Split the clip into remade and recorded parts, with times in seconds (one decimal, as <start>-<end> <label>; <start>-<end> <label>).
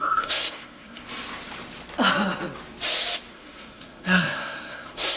0.0-1.0 remade; 1.0-3.3 recorded; 3.3-5.2 remade